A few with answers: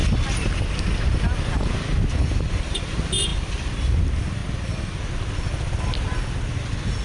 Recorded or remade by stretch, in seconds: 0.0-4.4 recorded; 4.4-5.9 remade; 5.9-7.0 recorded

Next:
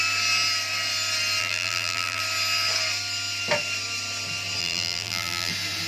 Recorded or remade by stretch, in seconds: 0.0-1.4 recorded; 1.4-2.2 remade; 2.2-4.6 recorded; 4.6-5.5 remade; 5.5-5.9 recorded

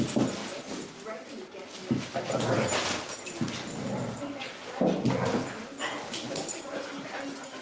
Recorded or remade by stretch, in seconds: 0.0-0.4 recorded; 0.4-0.9 remade; 0.9-7.6 recorded